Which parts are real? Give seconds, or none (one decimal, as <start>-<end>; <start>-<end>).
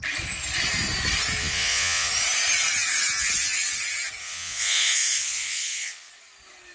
0.0-1.4; 2.1-4.2; 6.1-6.7